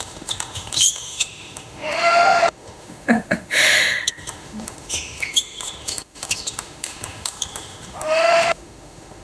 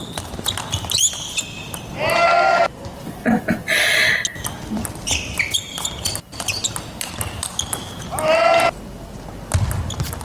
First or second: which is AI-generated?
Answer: first